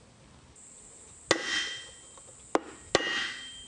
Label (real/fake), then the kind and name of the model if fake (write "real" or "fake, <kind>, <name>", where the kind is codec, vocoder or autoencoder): real